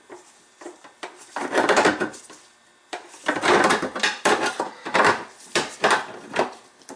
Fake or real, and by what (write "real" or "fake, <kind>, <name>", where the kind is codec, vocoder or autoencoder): fake, vocoder, BigVGAN v2